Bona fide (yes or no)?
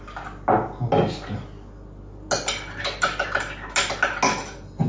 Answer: yes